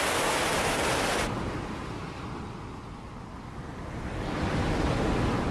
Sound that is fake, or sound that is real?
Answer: real